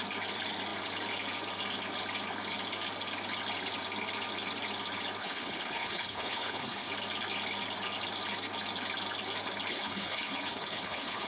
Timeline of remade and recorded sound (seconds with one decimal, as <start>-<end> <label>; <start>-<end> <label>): 0.0-5.2 recorded; 5.2-6.9 remade; 6.9-9.7 recorded; 9.7-11.3 remade